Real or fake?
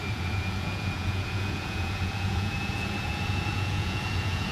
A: fake